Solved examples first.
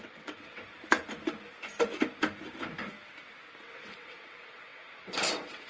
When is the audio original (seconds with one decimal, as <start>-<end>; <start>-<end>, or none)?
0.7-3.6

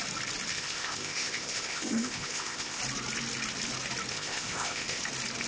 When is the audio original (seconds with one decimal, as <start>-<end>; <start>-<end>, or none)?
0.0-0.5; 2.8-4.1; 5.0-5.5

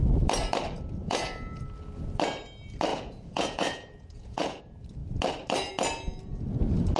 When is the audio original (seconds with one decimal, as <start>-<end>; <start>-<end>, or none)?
0.0-1.0; 1.6-2.9; 4.6-7.0

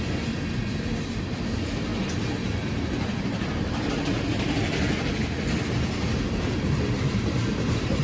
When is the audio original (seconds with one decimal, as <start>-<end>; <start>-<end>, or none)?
0.0-8.0

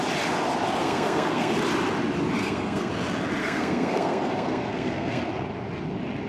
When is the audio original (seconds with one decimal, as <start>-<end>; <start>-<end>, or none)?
0.0-0.8; 1.5-2.4; 2.9-3.4; 5.2-6.3

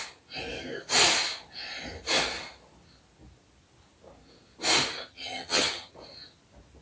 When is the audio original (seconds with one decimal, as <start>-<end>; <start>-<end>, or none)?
0.0-5.1; 5.9-6.8

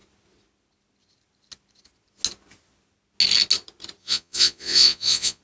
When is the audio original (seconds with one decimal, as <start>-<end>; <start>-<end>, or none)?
0.0-4.0

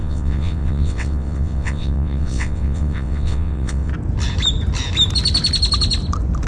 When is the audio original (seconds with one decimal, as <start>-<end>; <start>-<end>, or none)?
3.9-6.5